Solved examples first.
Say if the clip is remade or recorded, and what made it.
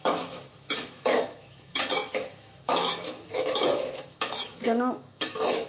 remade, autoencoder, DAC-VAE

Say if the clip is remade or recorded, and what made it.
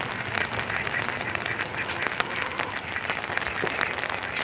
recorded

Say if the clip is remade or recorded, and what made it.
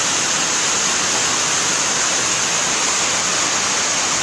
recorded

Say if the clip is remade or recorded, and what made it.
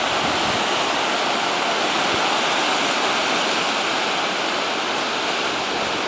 recorded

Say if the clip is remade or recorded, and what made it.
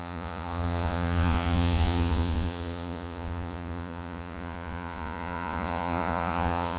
remade, vocoder, Vocos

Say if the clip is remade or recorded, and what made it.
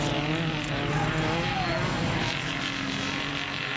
recorded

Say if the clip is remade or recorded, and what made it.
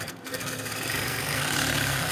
remade, codec, SNAC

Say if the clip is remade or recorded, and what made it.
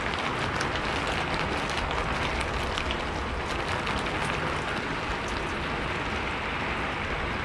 recorded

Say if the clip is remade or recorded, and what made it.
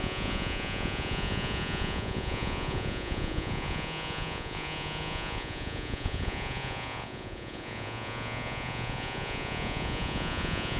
remade, vocoder, Vocos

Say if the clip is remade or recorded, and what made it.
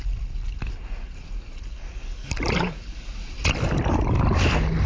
recorded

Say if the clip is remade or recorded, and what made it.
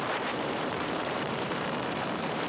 remade, vocoder, BigVGAN v2